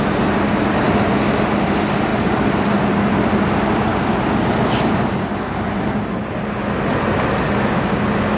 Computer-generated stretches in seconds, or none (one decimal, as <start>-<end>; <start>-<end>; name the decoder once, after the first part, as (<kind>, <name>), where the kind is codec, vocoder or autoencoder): 2.1-2.8 (vocoder, BigVGAN v2)